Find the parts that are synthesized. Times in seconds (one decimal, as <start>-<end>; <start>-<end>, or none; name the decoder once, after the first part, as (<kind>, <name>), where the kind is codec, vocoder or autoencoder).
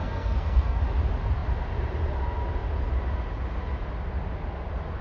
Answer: 0.0-0.8 (codec, SNAC)